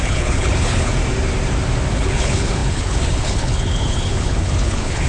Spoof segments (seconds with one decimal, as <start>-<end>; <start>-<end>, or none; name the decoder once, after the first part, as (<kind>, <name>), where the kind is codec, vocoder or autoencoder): 0.0-0.9 (codec, HILCodec); 1.9-5.1